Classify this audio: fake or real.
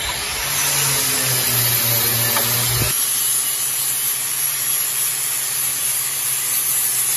real